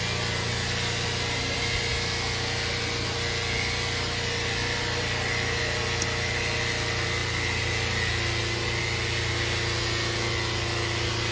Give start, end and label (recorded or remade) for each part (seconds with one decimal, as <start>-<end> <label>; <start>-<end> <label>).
0.0-11.3 recorded